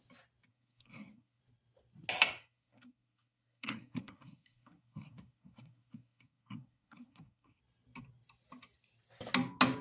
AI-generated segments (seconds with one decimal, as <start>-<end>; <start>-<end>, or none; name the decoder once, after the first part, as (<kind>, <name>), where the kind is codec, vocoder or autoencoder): 0.5-1.4 (codec, SNAC); 2.4-7.6